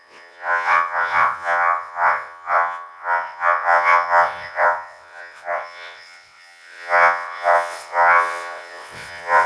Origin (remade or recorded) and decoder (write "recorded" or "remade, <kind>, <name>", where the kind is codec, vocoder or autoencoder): remade, vocoder, WaveNeXt